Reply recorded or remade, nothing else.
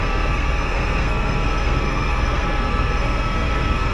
remade